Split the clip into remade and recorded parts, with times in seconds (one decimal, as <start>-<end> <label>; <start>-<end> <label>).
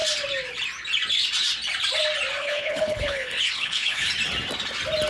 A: 0.0-2.4 recorded; 2.4-4.1 remade; 4.1-5.1 recorded